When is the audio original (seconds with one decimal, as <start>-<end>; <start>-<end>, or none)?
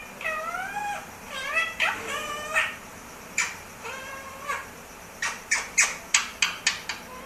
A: 0.0-0.8; 1.9-2.9; 5.8-7.3